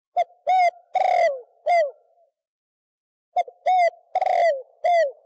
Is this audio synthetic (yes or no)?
no